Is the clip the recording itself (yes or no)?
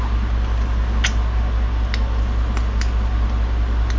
yes